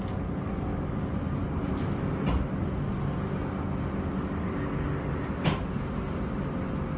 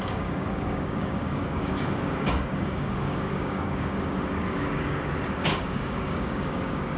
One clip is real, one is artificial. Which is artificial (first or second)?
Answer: second